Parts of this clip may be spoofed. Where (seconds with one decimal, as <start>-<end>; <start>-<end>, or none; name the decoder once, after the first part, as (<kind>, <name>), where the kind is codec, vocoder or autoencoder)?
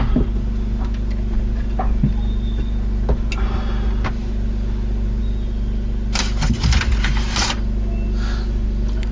none